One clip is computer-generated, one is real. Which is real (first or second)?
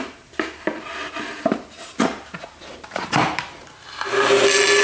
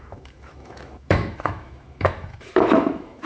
first